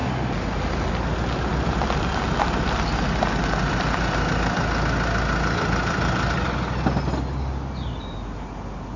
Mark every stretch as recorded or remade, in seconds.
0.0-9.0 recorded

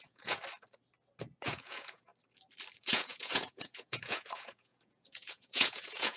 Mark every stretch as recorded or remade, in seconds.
0.0-0.4 remade; 0.4-1.4 recorded; 1.4-2.1 remade; 2.1-2.8 recorded; 2.8-6.2 remade